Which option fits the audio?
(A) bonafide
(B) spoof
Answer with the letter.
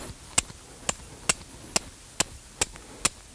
A